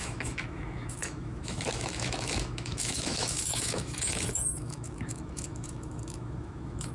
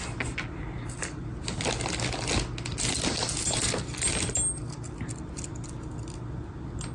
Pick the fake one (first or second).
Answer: first